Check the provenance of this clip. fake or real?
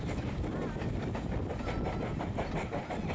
real